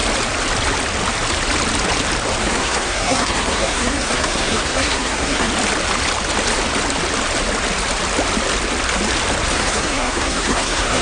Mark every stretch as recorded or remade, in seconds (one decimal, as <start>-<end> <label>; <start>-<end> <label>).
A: 0.0-2.4 recorded; 2.4-5.5 remade; 5.5-9.5 recorded; 9.5-11.0 remade